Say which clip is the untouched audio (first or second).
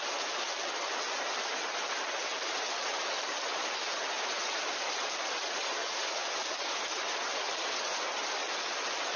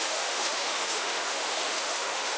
first